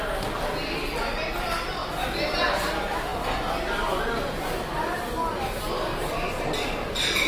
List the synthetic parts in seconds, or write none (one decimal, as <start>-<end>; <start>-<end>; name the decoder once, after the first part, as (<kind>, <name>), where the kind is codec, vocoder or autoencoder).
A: 5.9-6.7 (vocoder, BigVGAN v2)